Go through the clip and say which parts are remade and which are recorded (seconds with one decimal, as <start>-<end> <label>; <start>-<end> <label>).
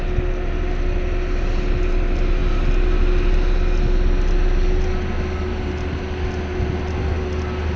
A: 0.0-7.8 recorded